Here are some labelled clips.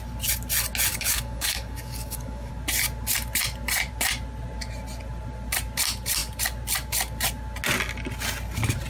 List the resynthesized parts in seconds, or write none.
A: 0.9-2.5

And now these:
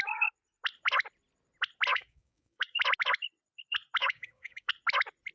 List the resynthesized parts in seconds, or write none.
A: 1.9-2.8; 4.0-4.7

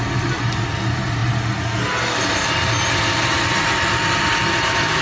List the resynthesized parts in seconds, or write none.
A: none